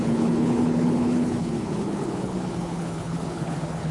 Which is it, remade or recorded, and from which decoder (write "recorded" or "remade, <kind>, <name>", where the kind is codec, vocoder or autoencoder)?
remade, codec, HILCodec